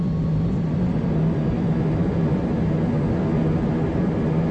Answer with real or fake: real